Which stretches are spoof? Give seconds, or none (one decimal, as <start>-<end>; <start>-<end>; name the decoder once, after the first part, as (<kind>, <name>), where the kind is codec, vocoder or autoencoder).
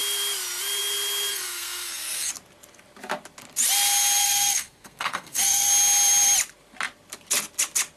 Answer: 1.3-2.3 (codec, SNAC); 4.2-5.7